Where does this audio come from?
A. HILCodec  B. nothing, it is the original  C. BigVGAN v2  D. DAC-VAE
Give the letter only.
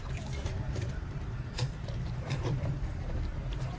C